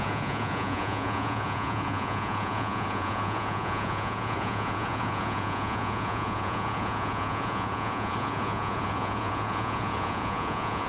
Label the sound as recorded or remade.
remade